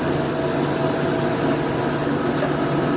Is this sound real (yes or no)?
yes